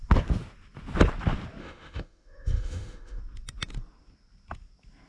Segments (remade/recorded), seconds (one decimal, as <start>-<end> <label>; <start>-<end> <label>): 0.0-1.6 recorded; 1.6-3.2 remade; 3.2-5.1 recorded